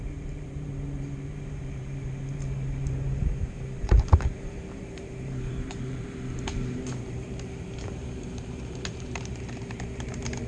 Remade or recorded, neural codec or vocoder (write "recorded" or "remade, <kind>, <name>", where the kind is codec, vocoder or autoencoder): remade, vocoder, BigVGAN v2